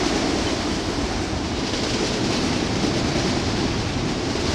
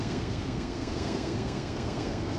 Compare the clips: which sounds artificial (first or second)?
second